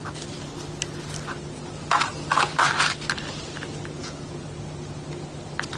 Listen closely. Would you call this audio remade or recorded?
recorded